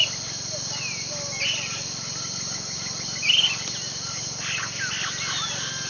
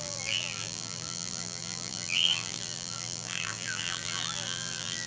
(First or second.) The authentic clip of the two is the first